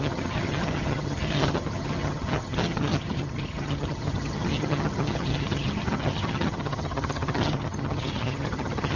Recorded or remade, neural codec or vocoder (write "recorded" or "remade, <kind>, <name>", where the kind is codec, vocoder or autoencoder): remade, vocoder, HiFi-GAN